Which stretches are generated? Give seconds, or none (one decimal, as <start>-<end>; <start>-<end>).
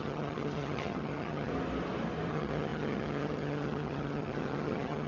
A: 0.0-1.5; 2.3-5.1